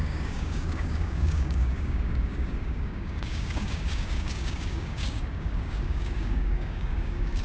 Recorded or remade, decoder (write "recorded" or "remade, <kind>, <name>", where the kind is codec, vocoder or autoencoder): remade, codec, DAC